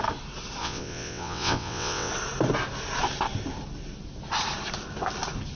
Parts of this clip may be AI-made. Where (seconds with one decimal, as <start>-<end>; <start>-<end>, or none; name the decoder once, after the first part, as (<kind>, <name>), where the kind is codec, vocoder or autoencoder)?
0.6-2.1 (vocoder, WaveNeXt)